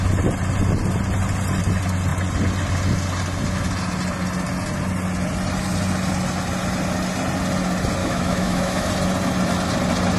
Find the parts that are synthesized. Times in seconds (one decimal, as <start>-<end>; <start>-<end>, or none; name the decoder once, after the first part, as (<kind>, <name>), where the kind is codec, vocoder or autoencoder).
8.0-8.9 (autoencoder, DAC-VAE)